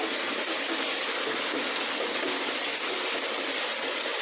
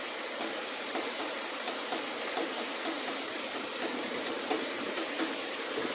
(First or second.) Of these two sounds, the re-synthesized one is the second